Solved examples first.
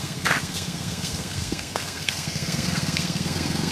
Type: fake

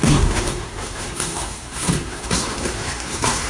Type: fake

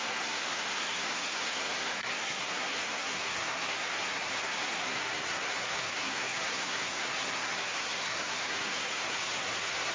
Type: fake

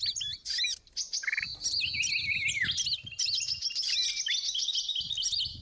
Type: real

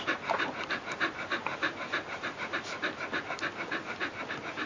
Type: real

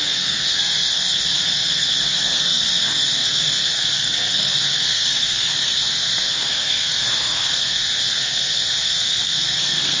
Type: fake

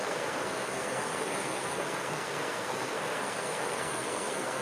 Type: fake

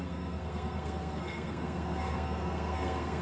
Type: fake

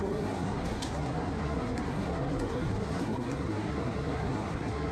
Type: fake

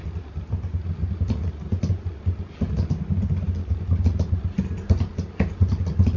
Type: real